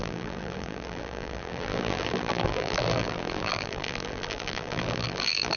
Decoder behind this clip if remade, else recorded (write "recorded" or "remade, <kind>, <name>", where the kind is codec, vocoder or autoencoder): remade, vocoder, BigVGAN v2